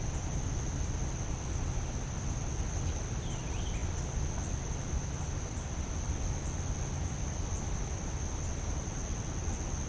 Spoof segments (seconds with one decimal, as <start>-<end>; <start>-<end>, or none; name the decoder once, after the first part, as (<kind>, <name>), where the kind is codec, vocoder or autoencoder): none